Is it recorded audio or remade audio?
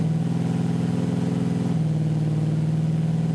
recorded